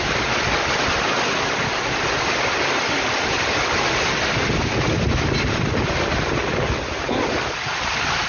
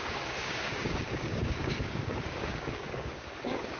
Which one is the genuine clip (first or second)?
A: first